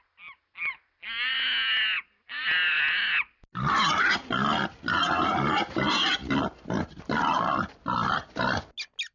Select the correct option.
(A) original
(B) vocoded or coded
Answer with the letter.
A